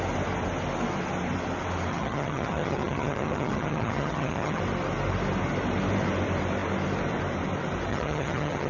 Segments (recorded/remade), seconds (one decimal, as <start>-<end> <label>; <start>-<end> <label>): 0.0-1.9 recorded; 1.9-4.6 remade; 4.6-7.9 recorded; 7.9-8.7 remade